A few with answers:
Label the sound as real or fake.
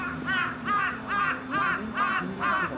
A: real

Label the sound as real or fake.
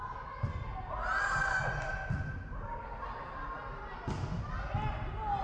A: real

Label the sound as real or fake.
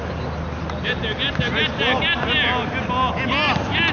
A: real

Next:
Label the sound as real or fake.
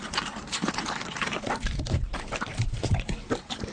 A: fake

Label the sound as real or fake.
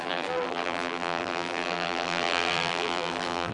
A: fake